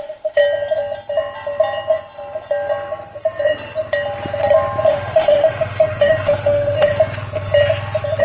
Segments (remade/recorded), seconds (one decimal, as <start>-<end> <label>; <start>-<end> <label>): 0.0-0.4 remade; 0.4-4.9 recorded; 4.9-6.9 remade; 6.9-8.2 recorded